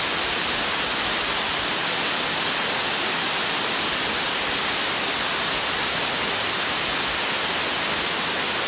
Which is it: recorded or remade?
recorded